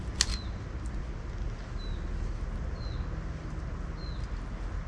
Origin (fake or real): real